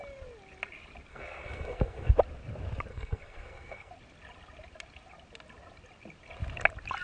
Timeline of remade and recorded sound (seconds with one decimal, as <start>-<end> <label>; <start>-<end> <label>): 0.0-1.1 recorded; 1.1-2.1 remade; 2.1-2.9 recorded; 2.9-3.9 remade; 3.9-7.0 recorded